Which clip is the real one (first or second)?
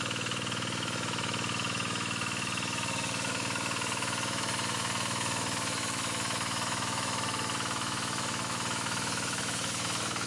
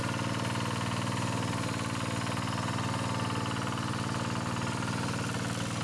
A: second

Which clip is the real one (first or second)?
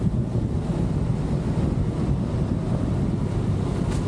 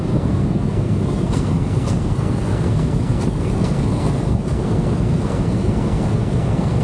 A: first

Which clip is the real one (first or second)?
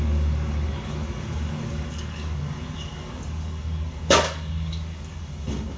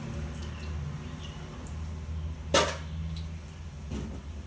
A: second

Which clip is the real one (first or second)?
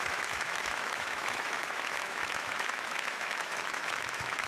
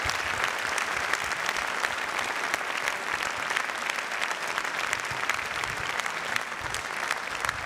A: second